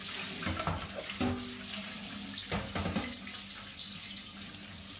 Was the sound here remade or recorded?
recorded